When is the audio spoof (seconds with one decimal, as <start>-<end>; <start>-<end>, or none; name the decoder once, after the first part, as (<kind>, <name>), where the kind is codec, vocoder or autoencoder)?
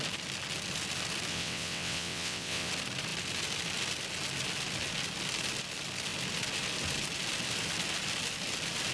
1.3-2.7 (vocoder, WaveNeXt)